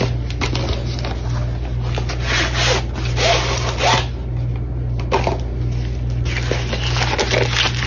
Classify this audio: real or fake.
real